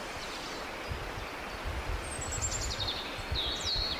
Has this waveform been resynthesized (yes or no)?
no